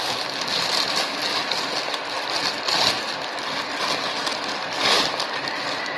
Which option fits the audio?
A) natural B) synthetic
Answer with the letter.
A